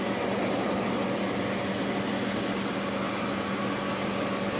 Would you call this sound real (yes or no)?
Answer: yes